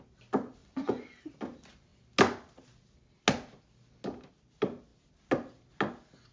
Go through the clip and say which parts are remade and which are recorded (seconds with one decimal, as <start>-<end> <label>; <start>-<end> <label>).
0.0-0.6 recorded; 0.6-1.3 remade; 1.3-6.3 recorded